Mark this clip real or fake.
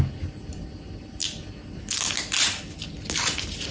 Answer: real